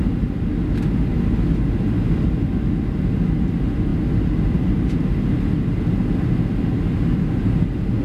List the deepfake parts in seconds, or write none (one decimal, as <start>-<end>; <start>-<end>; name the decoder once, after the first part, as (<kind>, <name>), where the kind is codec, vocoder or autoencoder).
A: none